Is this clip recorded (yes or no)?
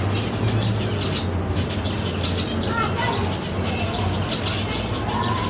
yes